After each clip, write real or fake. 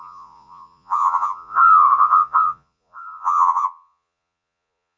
fake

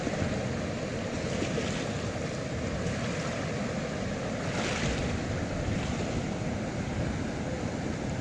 real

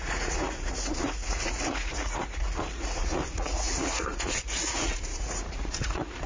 fake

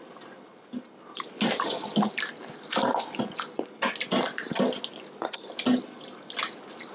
real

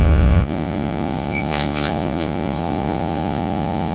fake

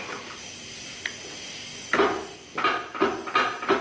real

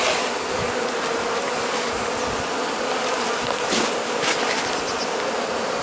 real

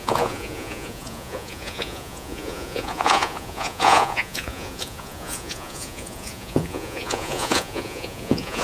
fake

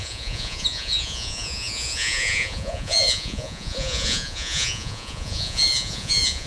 fake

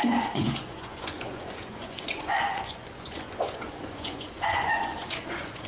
fake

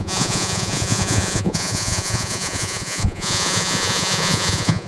fake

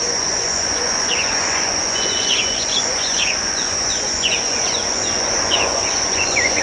fake